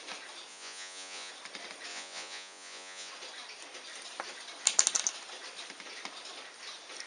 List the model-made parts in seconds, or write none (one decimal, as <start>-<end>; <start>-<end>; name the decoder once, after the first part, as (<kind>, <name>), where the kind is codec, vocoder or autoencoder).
0.5-1.3 (vocoder, Vocos); 1.9-3.1